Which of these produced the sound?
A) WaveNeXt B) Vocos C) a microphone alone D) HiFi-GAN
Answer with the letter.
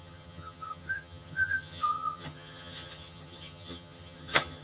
D